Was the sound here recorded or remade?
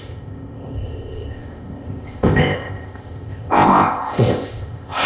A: remade